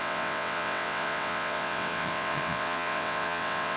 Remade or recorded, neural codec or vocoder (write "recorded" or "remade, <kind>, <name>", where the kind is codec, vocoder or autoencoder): remade, vocoder, WaveNeXt